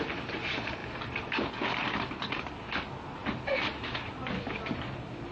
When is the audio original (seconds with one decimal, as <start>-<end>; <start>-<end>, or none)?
0.0-5.3